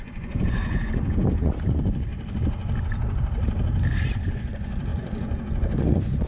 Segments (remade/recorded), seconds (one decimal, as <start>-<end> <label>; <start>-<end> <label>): 0.0-2.1 remade; 2.1-4.1 recorded; 4.1-6.3 remade